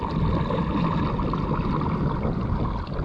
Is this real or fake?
real